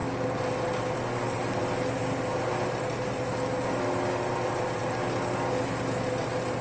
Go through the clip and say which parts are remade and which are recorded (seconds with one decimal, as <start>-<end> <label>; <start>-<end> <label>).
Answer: 0.0-6.6 recorded